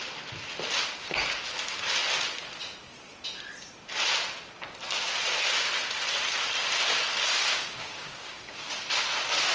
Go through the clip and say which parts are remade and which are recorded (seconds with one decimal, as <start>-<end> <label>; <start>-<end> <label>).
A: 0.0-7.5 recorded; 7.5-8.7 remade; 8.7-9.5 recorded